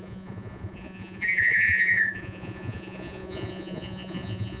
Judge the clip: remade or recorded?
remade